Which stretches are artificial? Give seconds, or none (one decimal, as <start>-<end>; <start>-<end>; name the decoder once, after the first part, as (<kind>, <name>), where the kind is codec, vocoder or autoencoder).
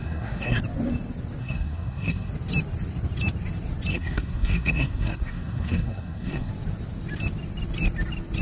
0.0-0.6 (codec, SNAC); 1.4-2.3; 3.9-6.5